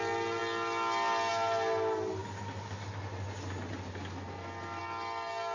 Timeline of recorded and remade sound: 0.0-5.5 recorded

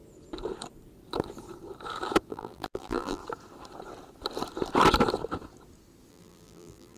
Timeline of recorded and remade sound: 0.0-2.3 recorded; 2.3-3.2 remade; 3.2-6.1 recorded; 6.1-7.0 remade